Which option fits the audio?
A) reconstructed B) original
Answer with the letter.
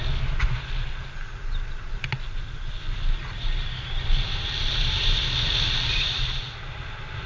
B